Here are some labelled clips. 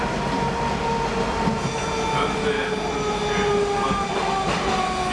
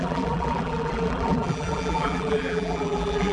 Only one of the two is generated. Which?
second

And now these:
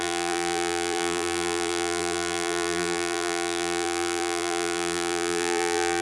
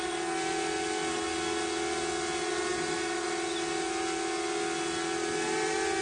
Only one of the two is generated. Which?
first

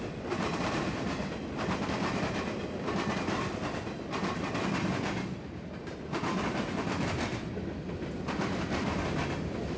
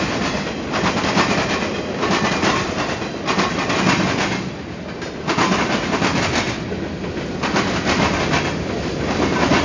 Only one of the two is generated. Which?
first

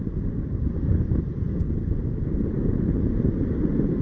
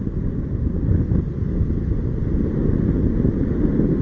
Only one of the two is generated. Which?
first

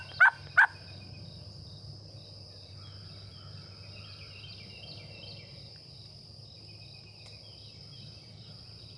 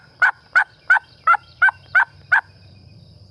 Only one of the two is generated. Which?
second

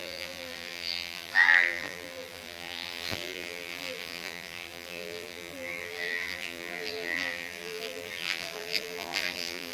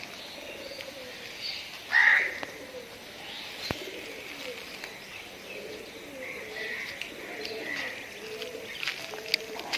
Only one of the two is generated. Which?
first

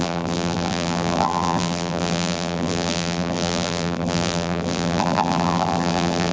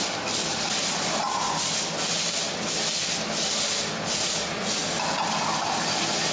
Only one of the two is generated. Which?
first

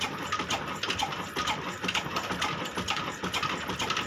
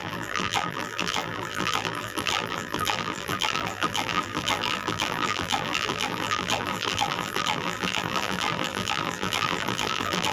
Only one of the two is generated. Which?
second